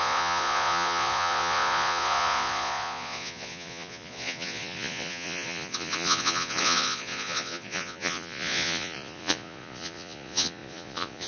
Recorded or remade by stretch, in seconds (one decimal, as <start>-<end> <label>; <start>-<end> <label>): 0.0-11.3 remade